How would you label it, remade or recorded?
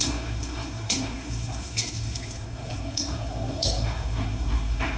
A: remade